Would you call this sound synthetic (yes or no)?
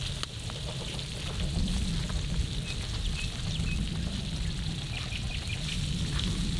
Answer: no